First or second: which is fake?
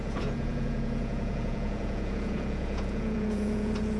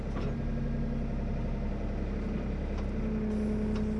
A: first